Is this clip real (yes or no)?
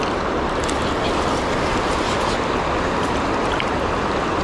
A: yes